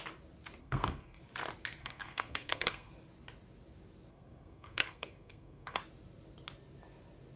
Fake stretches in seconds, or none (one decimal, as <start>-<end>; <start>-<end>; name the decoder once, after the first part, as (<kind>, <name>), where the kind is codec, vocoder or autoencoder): 0.6-1.2 (codec, SNAC); 1.8-2.9; 4.1-5.8